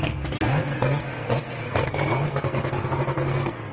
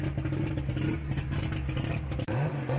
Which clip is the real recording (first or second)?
second